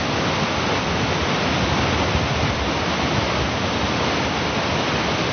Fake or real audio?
real